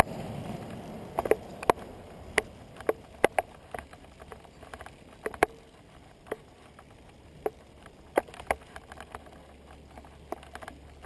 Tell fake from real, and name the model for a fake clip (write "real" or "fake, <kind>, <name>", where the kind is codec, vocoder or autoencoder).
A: real